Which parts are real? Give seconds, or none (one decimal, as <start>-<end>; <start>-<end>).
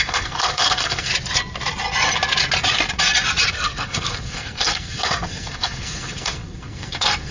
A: 1.1-3.5